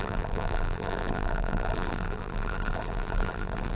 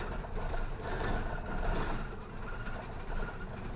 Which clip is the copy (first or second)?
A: first